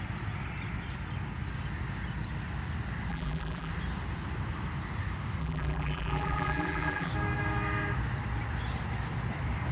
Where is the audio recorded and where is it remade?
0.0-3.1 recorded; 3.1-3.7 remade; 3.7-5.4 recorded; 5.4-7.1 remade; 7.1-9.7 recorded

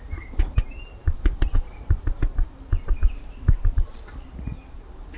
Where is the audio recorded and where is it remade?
0.0-5.2 remade

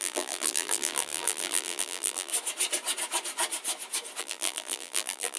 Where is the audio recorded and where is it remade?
0.0-2.3 remade; 2.3-4.2 recorded; 4.2-5.4 remade

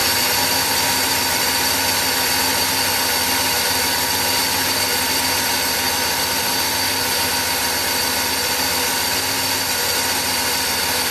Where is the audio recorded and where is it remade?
0.0-1.5 remade; 1.5-11.1 recorded

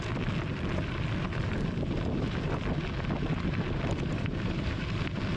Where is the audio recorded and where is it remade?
0.0-4.1 recorded; 4.1-4.8 remade; 4.8-5.4 recorded

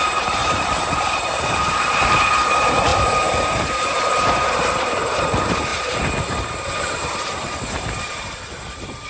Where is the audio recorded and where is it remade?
0.0-9.1 remade

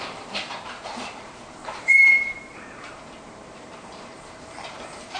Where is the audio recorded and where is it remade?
0.0-5.2 remade